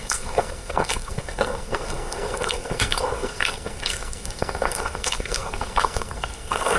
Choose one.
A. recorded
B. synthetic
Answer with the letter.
B